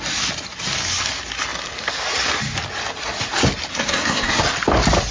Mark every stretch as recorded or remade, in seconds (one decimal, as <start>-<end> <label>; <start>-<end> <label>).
0.0-3.7 recorded; 3.7-4.4 remade; 4.4-5.1 recorded